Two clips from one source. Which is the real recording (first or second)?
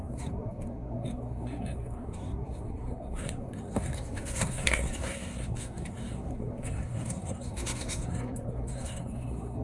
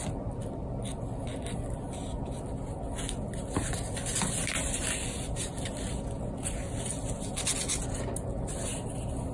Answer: second